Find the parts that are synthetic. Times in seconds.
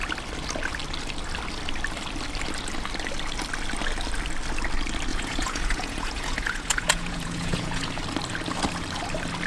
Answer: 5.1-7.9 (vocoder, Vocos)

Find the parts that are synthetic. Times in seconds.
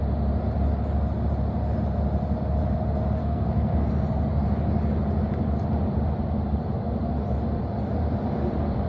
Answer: 3.2-3.9 (codec, SNAC)